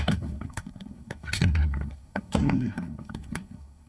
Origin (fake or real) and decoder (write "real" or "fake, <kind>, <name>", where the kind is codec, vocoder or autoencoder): fake, codec, SNAC